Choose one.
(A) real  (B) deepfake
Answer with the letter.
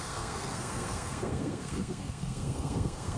B